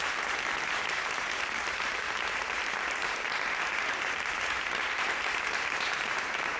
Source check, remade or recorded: remade